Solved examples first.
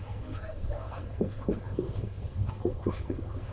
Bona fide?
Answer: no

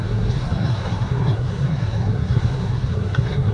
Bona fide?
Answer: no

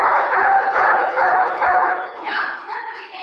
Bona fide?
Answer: no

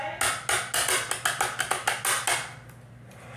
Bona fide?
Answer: yes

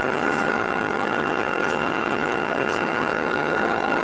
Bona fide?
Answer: no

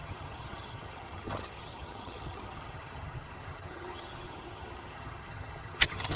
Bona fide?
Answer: no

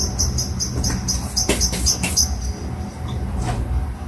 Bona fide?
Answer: yes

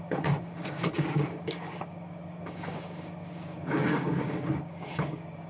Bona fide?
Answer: no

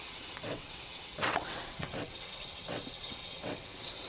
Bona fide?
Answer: no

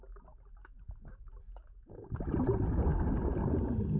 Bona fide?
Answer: yes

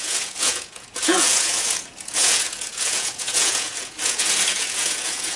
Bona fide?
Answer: no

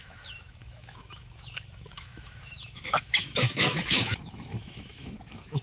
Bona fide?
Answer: no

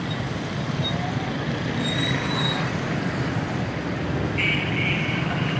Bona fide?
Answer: yes